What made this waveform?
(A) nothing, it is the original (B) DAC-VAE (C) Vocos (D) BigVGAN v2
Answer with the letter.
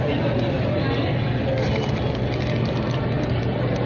A